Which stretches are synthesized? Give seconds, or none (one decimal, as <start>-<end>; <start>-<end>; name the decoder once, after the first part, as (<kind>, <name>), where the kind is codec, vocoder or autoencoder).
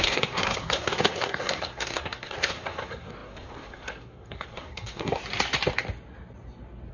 0.0-5.2 (codec, SNAC)